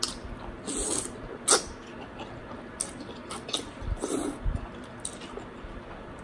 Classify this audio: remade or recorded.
recorded